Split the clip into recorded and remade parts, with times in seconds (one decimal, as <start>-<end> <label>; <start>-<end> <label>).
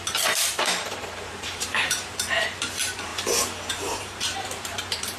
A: 0.0-3.1 remade; 3.1-3.7 recorded; 3.7-5.2 remade